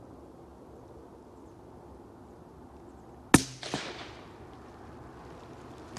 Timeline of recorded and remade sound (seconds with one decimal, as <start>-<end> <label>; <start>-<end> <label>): 0.0-6.0 recorded

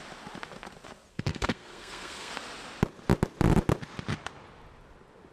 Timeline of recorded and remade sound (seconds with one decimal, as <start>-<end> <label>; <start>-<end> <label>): 0.0-1.1 recorded; 1.1-2.3 remade; 2.3-5.3 recorded

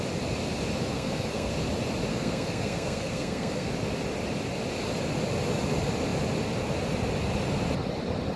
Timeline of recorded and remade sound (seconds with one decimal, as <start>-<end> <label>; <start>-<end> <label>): 0.0-0.9 recorded; 0.9-1.5 remade; 1.5-2.1 recorded; 2.1-3.7 remade; 3.7-8.4 recorded

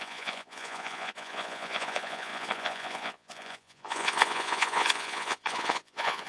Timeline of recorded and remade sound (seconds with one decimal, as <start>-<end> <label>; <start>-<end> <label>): 0.0-6.3 remade

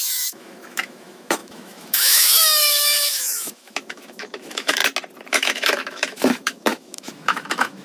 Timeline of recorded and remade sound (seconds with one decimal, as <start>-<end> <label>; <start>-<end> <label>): 0.0-4.8 remade; 4.8-5.3 recorded; 5.3-7.8 remade

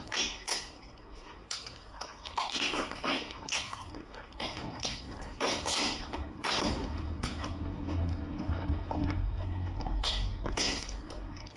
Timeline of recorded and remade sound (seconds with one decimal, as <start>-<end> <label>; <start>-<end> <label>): 0.0-11.6 remade